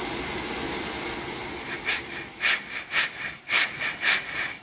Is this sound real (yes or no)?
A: yes